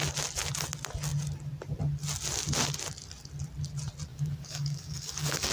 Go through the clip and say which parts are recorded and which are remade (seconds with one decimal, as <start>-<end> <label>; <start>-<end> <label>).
0.0-4.1 recorded; 4.1-5.5 remade